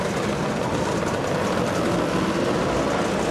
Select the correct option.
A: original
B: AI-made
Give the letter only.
A